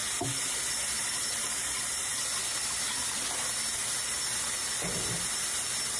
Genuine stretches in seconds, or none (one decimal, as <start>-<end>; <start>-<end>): 2.2-6.0